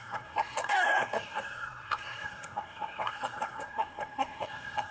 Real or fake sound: fake